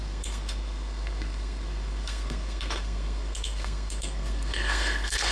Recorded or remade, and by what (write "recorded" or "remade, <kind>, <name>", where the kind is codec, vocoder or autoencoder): remade, codec, SNAC